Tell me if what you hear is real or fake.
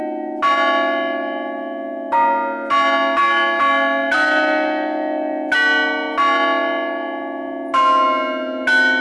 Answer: real